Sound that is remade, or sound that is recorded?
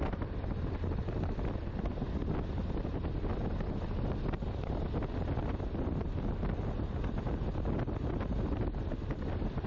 recorded